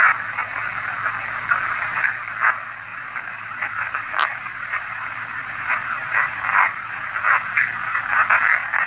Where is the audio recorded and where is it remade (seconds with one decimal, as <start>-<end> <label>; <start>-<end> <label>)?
0.0-2.9 recorded; 2.9-7.1 remade; 7.1-8.9 recorded